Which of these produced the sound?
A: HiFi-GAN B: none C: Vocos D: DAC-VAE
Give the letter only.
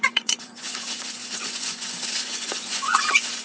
C